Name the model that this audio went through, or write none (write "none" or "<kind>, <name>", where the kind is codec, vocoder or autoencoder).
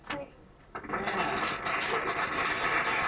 none